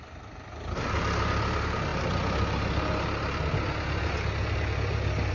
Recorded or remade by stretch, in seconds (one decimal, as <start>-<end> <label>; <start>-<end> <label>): 0.0-5.3 recorded